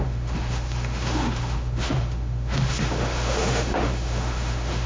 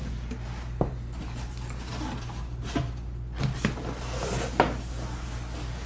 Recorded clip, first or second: second